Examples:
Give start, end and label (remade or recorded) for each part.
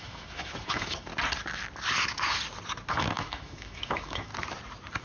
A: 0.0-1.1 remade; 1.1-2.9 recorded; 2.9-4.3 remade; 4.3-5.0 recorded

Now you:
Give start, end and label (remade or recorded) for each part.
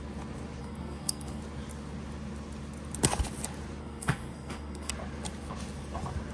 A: 0.0-0.6 recorded; 0.6-1.4 remade; 1.4-3.8 recorded; 3.8-4.9 remade; 4.9-6.3 recorded